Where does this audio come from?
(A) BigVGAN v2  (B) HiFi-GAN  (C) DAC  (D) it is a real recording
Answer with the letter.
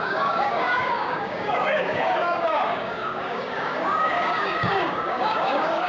C